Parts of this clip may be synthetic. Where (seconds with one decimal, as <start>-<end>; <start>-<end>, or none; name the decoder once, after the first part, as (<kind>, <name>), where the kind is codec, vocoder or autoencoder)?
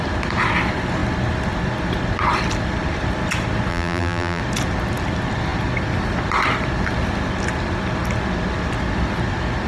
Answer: 3.7-4.4 (vocoder, BigVGAN v2)